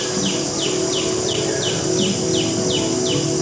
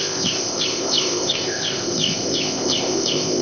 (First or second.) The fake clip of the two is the second